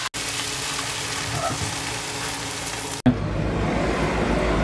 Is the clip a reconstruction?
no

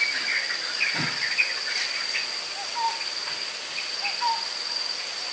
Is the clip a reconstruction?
no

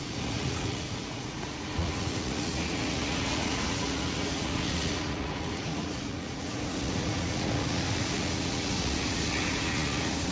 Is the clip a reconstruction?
yes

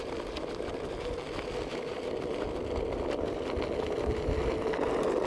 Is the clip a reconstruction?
no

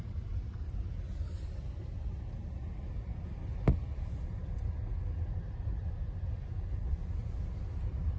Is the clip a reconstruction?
no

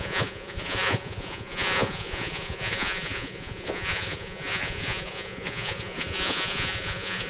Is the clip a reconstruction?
yes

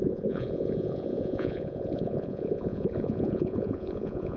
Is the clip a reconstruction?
yes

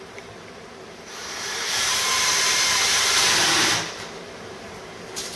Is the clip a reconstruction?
yes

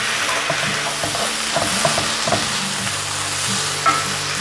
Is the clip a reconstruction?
no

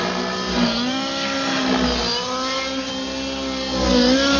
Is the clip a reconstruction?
no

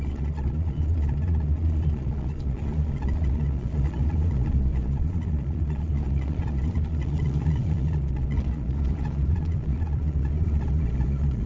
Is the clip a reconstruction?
yes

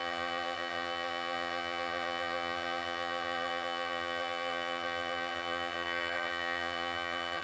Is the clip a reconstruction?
yes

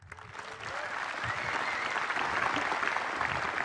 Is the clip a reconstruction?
no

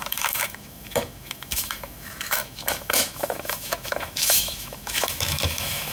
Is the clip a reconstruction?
yes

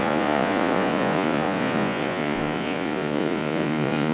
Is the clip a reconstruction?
yes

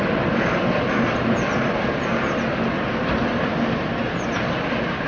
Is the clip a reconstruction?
no